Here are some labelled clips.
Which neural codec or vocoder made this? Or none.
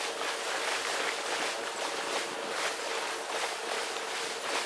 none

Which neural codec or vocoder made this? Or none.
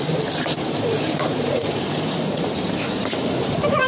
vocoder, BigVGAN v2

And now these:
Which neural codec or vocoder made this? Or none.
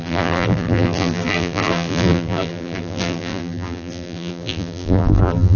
vocoder, BigVGAN v2